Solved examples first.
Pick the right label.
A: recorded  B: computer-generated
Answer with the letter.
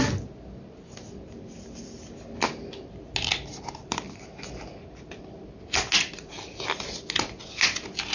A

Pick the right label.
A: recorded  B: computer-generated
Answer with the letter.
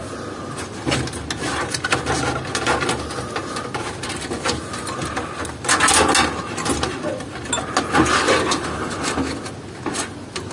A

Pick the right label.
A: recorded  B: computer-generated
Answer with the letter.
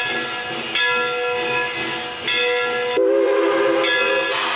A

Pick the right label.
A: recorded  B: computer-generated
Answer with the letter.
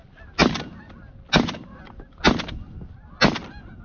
A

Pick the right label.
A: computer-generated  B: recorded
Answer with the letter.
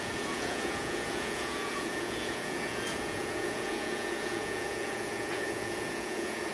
A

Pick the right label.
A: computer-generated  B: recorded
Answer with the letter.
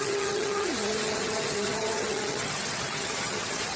A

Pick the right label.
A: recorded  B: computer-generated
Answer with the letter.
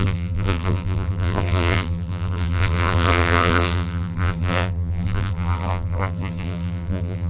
B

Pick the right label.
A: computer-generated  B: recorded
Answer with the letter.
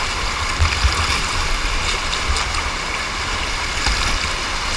B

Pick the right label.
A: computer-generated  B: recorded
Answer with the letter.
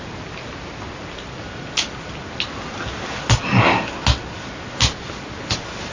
B